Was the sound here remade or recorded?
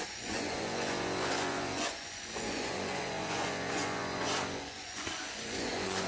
remade